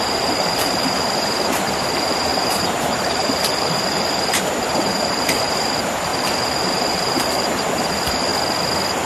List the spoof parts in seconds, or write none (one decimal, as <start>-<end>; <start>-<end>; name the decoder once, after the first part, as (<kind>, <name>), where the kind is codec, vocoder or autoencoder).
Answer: 0.0-8.3 (vocoder, BigVGAN v2)